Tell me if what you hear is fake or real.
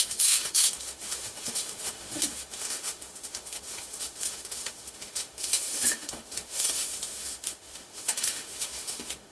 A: fake